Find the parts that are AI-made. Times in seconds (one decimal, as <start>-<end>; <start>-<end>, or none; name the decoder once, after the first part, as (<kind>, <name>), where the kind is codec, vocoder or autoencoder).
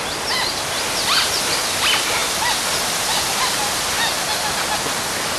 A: none